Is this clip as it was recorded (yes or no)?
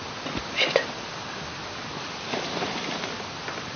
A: yes